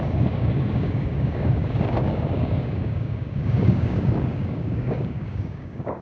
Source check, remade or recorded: remade